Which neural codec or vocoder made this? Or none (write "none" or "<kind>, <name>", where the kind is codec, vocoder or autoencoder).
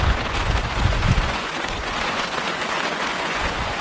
vocoder, Vocos